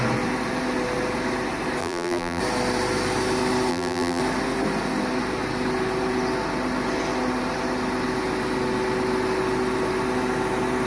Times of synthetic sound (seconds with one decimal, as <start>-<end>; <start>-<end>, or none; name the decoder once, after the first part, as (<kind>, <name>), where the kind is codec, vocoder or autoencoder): 1.8-2.4 (vocoder, BigVGAN v2); 3.7-4.2